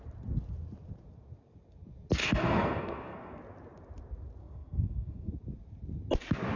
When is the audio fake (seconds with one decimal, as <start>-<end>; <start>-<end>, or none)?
2.2-3.4; 4.4-5.3